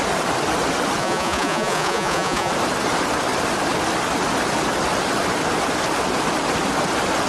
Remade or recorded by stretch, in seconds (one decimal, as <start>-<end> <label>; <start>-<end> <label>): 0.0-1.0 recorded; 1.0-2.5 remade; 2.5-7.3 recorded